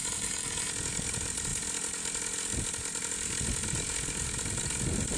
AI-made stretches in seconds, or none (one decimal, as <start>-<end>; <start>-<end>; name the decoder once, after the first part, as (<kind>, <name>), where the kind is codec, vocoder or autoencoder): 0.0-0.7 (codec, DAC)